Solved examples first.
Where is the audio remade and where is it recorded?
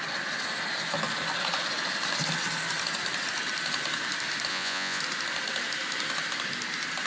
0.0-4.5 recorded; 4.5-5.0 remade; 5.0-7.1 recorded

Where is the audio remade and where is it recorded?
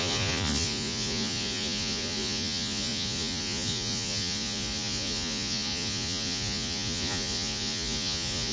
0.0-8.5 remade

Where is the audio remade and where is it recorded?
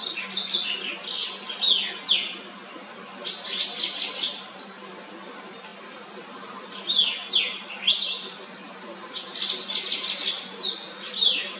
0.0-11.6 recorded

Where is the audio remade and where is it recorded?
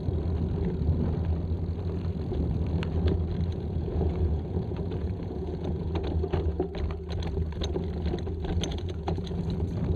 0.0-3.5 recorded; 3.5-5.9 remade; 5.9-8.7 recorded; 8.7-9.4 remade; 9.4-10.0 recorded